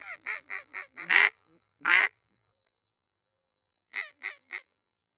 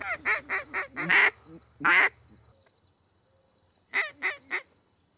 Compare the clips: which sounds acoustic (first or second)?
second